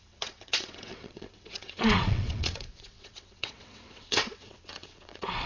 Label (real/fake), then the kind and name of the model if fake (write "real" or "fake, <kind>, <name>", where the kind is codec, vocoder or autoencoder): fake, vocoder, WaveNeXt